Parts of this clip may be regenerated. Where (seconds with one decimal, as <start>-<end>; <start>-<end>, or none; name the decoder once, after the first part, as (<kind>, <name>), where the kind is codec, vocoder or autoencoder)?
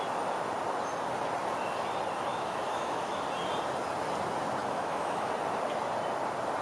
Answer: 2.3-3.2 (autoencoder, DAC-VAE); 4.6-5.3